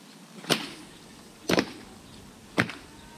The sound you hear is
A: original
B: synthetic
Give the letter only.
A